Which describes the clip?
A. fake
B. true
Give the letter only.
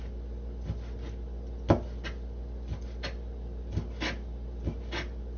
B